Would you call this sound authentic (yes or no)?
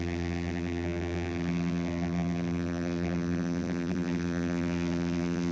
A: no